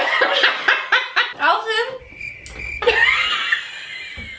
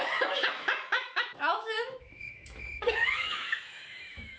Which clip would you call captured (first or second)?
first